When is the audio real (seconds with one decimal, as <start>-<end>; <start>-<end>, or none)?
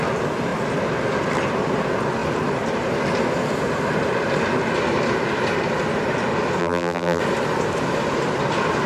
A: 0.0-6.6; 7.2-8.9